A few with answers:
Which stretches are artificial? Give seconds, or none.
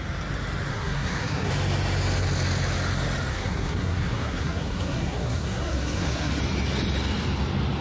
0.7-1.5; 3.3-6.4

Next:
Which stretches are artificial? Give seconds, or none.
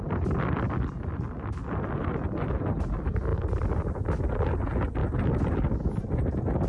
none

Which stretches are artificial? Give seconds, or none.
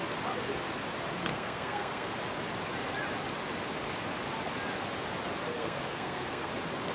1.3-2.1; 5.5-6.5